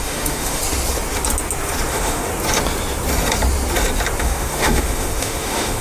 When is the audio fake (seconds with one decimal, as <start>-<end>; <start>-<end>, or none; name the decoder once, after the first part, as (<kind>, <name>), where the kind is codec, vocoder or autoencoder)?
0.0-0.6 (autoencoder, DAC-VAE); 1.9-2.3; 4.2-5.8

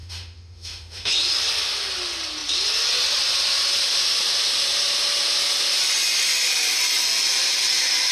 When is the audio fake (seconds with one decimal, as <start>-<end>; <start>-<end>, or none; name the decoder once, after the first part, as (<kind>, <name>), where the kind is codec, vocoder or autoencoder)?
0.0-1.1 (autoencoder, DAC-VAE)

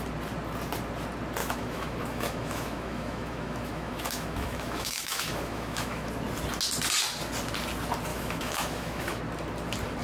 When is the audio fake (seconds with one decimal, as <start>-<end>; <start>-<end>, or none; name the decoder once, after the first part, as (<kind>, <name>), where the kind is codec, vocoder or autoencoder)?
1.4-6.1 (autoencoder, DAC-VAE); 8.1-9.2

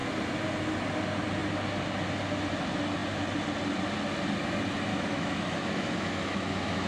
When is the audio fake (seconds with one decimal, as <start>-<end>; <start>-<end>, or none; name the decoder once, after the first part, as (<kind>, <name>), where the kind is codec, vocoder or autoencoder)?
4.9-6.9 (autoencoder, DAC-VAE)